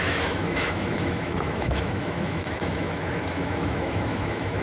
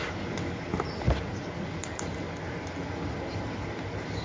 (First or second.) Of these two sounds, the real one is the second